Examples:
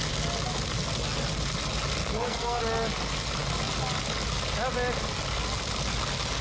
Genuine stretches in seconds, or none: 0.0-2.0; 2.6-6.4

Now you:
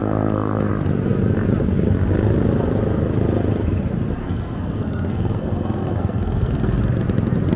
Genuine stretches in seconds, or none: 0.7-4.2; 6.8-7.6

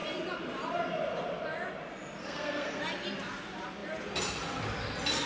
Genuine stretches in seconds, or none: 0.0-2.2; 2.8-5.3

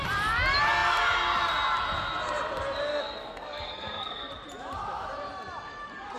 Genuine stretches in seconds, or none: 0.0-2.9; 4.3-6.2

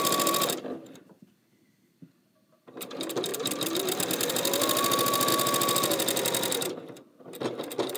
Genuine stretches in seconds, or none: 0.0-8.0

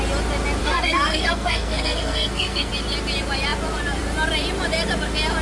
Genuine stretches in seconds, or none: 0.0-0.6; 2.7-5.4

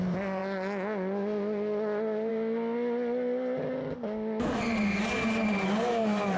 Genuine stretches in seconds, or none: 0.0-6.4